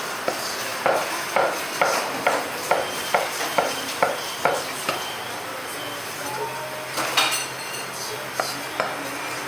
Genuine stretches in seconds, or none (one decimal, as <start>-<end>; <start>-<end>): 0.0-0.7; 5.3-9.5